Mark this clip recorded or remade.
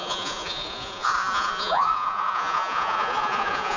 remade